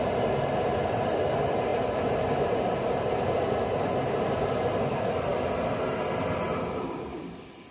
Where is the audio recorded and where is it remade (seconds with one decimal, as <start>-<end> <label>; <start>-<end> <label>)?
0.0-1.7 recorded; 1.7-4.8 remade; 4.8-7.7 recorded